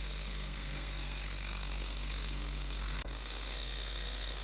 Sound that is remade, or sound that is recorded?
remade